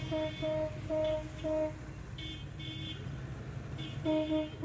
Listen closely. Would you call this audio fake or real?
real